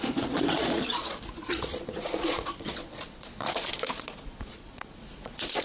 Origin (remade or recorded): remade